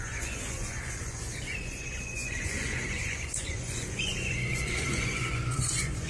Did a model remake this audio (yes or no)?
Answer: yes